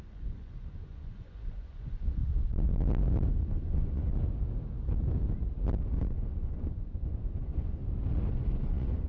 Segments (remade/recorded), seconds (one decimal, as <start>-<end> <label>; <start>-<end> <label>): 0.0-2.2 remade; 2.2-3.3 recorded; 3.3-4.1 remade; 4.1-5.8 recorded; 5.8-7.8 remade; 7.8-8.3 recorded; 8.3-9.1 remade